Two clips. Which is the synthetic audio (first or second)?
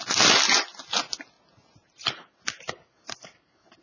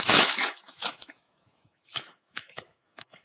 second